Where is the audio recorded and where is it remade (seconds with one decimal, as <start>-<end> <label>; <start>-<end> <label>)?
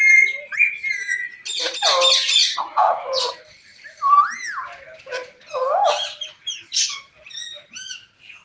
0.0-2.4 recorded; 2.4-3.3 remade; 3.3-8.4 recorded